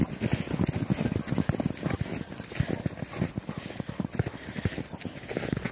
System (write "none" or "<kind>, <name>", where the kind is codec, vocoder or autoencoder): none